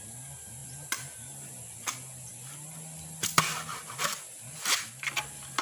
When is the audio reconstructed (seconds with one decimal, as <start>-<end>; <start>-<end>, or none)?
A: 0.6-1.9; 2.3-4.8